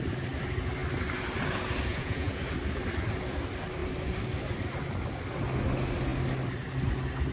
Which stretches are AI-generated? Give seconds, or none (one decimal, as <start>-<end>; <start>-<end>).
1.9-2.4